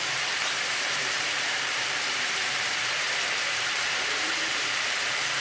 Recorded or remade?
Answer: remade